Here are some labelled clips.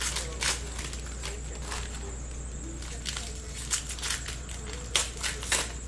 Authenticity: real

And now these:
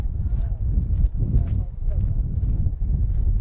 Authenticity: real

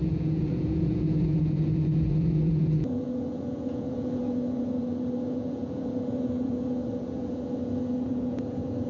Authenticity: fake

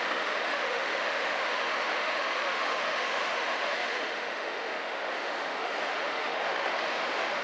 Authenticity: fake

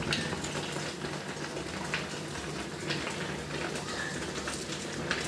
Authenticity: real